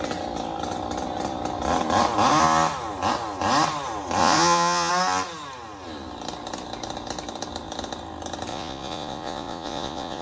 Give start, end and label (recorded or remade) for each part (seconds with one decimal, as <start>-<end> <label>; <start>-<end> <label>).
0.0-4.2 recorded; 4.2-4.9 remade; 4.9-8.5 recorded; 8.5-10.2 remade